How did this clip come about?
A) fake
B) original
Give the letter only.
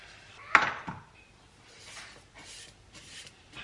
B